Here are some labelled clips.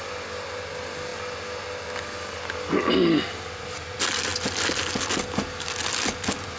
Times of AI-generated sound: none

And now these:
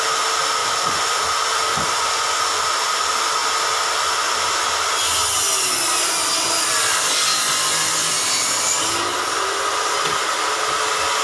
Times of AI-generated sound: 0.6-1.2 (vocoder, Vocos); 1.7-2.6

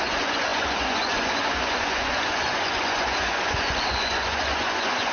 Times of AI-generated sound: 0.0-5.1 (vocoder, Vocos)

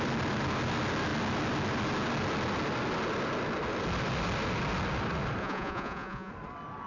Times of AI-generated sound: 5.4-6.3 (vocoder, Vocos)

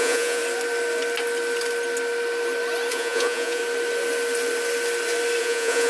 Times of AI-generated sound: 0.0-0.4 (vocoder, Vocos); 2.9-3.6; 5.4-5.9

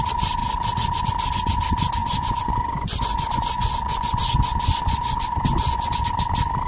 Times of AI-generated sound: 2.0-6.0 (vocoder, Vocos)

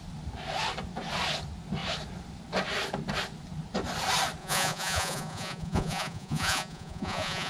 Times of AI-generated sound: 4.4-7.5 (vocoder, Vocos)

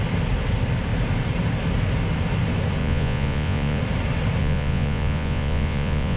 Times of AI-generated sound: 2.8-3.8 (vocoder, Vocos); 4.4-6.2